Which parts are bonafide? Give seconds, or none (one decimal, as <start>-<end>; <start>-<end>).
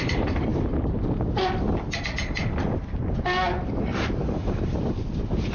0.5-3.8